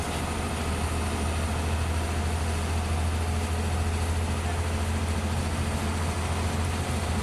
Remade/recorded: recorded